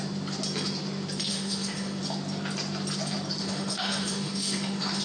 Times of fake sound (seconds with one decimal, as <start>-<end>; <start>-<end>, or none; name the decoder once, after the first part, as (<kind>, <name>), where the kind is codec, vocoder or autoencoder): 1.3-2.0 (autoencoder, DAC-VAE); 3.4-5.0